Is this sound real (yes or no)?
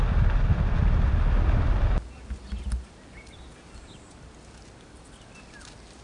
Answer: yes